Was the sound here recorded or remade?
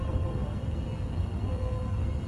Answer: remade